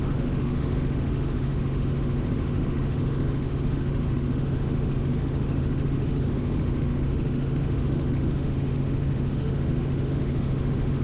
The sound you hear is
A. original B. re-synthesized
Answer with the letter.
B